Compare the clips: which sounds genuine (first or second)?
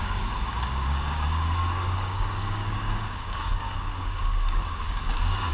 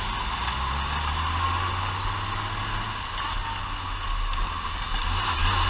second